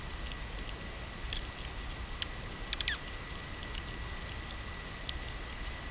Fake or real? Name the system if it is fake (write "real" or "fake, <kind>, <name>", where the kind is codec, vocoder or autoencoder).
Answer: real